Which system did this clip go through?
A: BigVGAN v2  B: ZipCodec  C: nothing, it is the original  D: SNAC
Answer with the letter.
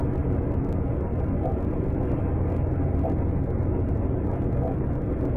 C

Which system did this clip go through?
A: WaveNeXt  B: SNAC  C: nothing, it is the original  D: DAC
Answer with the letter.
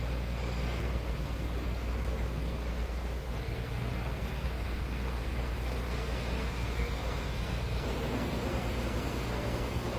B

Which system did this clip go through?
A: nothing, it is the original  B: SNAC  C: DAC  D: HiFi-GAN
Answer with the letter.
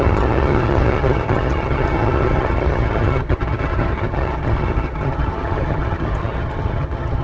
D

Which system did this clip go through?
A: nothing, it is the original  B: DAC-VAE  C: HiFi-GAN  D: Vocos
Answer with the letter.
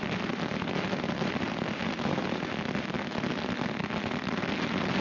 A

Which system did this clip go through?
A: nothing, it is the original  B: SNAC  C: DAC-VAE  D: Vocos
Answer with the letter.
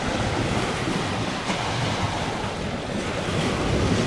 A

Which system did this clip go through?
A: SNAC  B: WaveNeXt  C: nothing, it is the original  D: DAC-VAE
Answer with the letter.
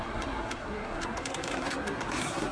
A